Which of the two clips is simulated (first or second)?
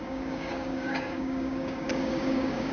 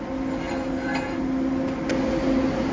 first